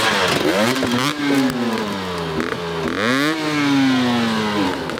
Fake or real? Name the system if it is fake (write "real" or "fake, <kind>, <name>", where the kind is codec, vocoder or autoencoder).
real